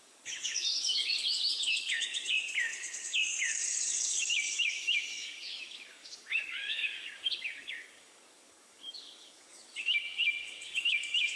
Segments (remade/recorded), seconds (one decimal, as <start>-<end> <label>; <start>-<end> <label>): 0.0-11.4 remade